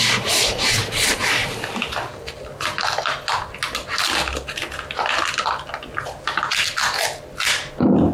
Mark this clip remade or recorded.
recorded